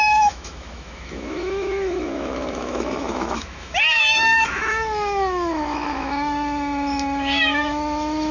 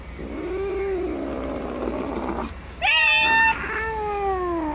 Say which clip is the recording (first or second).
second